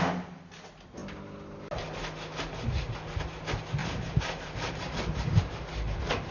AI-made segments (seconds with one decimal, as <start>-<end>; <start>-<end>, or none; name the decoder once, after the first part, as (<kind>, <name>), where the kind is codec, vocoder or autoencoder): 3.8-5.5 (vocoder, BigVGAN v2)